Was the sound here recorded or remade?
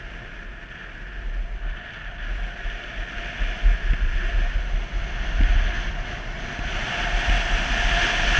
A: recorded